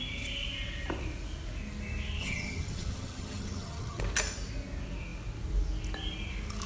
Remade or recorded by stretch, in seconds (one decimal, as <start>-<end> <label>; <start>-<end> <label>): 0.0-2.2 recorded; 2.2-4.0 remade; 4.0-6.7 recorded